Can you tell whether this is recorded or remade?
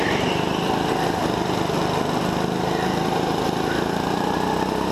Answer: recorded